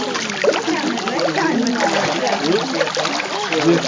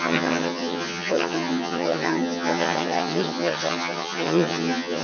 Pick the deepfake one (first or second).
second